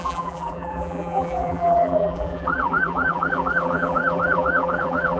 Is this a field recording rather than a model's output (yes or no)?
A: no